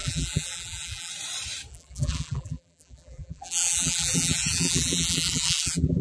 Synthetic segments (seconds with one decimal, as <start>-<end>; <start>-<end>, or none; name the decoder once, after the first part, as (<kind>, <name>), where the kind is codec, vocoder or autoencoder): 0.0-1.1 (vocoder, BigVGAN v2); 1.7-6.0